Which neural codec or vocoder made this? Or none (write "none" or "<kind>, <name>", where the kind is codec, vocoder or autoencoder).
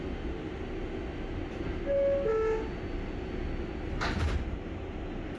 none